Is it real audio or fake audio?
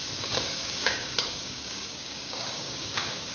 fake